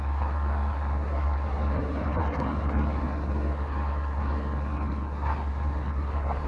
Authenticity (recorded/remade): remade